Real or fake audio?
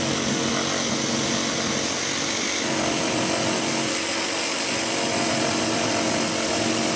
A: real